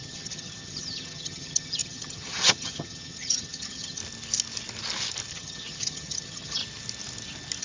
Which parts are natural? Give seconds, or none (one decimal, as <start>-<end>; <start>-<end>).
4.0-5.3; 6.6-7.6